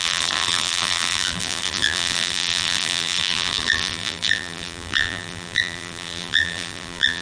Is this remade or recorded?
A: remade